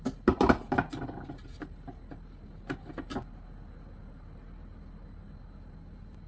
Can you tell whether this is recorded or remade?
recorded